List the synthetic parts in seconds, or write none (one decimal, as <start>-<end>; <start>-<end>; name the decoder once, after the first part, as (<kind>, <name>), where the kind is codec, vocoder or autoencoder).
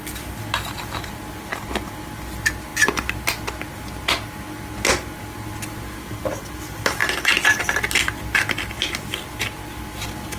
none